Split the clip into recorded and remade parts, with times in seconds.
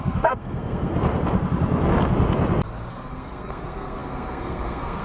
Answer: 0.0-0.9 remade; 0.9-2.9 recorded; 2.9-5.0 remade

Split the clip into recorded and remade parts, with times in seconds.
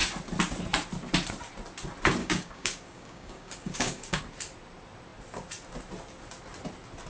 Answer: 0.0-2.2 recorded; 2.2-4.2 remade; 4.2-7.1 recorded